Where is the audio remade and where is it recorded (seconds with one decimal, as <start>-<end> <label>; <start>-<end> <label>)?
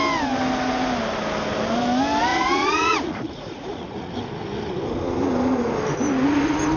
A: 0.0-2.3 recorded; 2.3-4.1 remade; 4.1-6.8 recorded